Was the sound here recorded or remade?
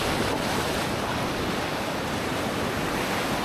recorded